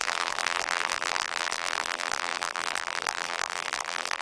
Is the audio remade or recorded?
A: remade